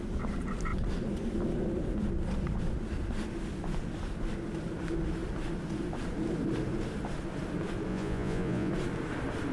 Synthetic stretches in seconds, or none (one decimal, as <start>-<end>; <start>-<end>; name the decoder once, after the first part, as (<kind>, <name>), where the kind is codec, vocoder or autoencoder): 7.9-8.7 (vocoder, Vocos)